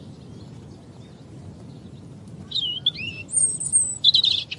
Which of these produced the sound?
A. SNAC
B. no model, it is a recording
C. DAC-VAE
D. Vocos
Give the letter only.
B